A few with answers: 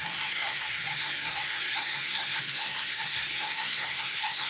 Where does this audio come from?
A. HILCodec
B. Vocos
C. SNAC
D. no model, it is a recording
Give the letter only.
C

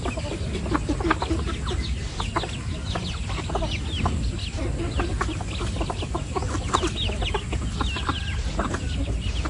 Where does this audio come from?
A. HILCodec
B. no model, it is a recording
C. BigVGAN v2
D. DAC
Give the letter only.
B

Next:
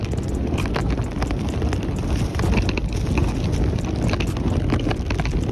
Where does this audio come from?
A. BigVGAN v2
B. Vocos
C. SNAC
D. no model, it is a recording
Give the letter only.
D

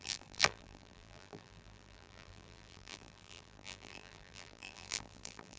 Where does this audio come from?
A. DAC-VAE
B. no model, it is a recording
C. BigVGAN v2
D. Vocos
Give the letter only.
C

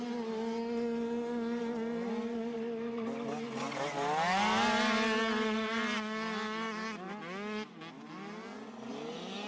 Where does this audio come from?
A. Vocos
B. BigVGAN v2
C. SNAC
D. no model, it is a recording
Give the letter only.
D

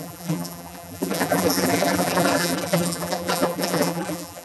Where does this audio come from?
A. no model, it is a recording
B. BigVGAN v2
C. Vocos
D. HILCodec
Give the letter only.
B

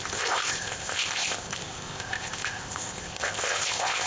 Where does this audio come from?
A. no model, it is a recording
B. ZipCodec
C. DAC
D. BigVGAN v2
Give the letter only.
B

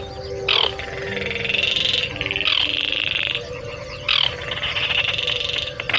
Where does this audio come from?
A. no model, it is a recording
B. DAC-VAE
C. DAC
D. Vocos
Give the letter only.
A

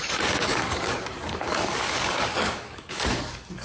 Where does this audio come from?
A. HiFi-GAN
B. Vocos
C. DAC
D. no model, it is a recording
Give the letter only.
C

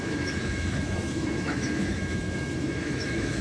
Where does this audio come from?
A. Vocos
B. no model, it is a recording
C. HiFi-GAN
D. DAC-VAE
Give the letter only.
D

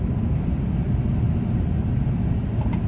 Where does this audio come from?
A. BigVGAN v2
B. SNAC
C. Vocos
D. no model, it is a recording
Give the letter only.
D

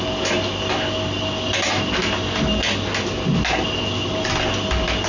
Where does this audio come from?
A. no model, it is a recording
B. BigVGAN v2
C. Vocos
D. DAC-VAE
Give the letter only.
A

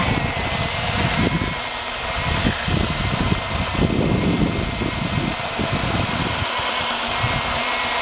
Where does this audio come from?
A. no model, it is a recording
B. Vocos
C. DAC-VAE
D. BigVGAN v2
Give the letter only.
A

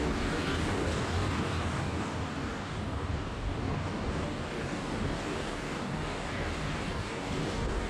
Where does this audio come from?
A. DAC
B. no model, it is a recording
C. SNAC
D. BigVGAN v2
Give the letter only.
A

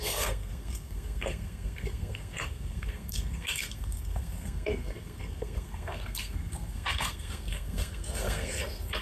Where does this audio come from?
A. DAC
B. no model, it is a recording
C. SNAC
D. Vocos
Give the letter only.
C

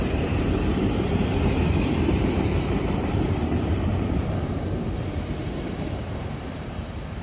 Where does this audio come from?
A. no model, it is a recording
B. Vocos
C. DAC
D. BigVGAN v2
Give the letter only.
D